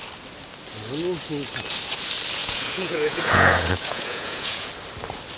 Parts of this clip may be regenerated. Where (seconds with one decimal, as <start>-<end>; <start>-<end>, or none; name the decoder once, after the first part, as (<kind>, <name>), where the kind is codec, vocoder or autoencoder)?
2.4-4.7 (vocoder, Vocos)